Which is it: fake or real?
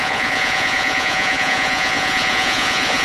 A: fake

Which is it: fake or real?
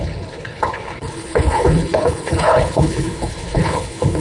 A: fake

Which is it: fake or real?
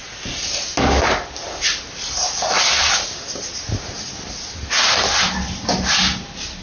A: real